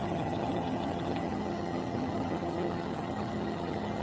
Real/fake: fake